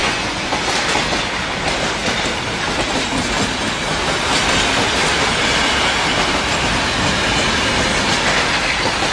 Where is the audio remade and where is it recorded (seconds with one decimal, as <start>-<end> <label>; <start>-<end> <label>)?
0.0-0.6 remade; 0.6-9.1 recorded